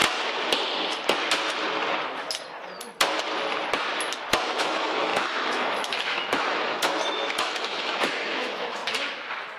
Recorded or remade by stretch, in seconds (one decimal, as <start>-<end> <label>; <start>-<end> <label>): 0.0-4.6 recorded; 4.6-8.8 remade; 8.8-9.6 recorded